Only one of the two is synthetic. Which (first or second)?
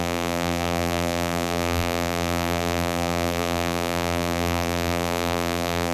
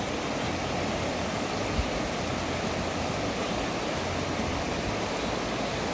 first